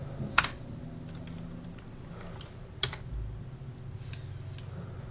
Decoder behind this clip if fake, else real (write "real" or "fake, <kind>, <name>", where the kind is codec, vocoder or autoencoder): real